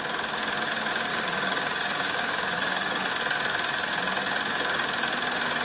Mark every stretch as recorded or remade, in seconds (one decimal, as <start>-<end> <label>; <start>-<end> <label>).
0.0-1.1 recorded; 1.1-3.1 remade; 3.1-5.6 recorded